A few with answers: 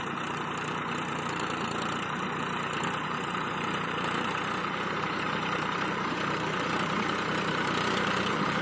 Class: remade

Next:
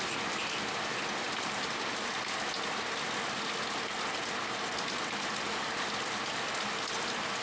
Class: recorded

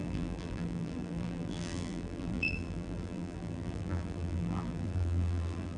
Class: remade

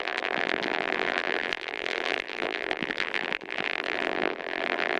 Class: remade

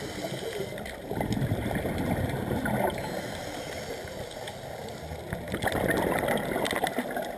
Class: recorded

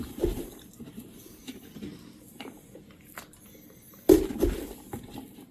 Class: recorded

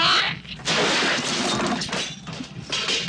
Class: recorded